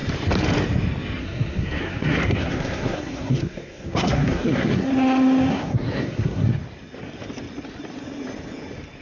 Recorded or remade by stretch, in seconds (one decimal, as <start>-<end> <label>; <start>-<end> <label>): 0.0-1.2 recorded; 1.2-4.9 remade; 4.9-5.5 recorded; 5.5-6.6 remade; 6.6-9.0 recorded

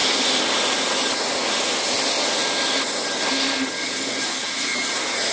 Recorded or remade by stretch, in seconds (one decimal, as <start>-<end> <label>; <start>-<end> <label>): 0.0-5.3 recorded